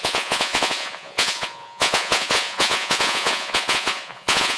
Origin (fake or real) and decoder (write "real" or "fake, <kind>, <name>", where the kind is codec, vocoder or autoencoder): fake, vocoder, Vocos